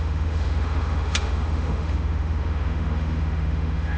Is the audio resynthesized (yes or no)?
yes